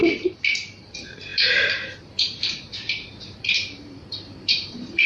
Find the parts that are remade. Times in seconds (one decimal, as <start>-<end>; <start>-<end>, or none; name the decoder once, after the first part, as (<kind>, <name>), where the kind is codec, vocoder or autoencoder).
0.0-5.1 (vocoder, BigVGAN v2)